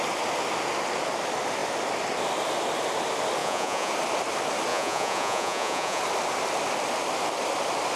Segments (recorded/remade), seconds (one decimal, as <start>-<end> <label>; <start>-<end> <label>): 0.0-3.4 recorded; 3.4-3.9 remade; 3.9-4.7 recorded; 4.7-6.0 remade; 6.0-8.0 recorded